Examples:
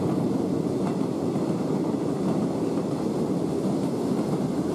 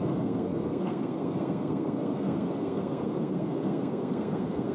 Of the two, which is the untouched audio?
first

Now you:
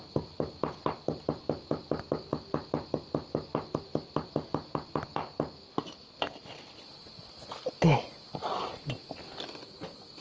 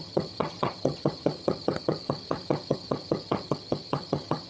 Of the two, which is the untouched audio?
first